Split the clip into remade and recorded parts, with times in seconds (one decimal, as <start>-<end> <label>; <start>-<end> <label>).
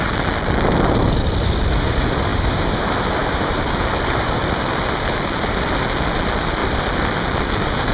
0.0-7.9 recorded